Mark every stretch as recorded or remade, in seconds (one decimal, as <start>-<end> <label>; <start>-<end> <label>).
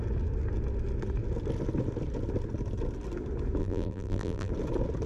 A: 0.0-3.6 recorded; 3.6-4.5 remade; 4.5-5.1 recorded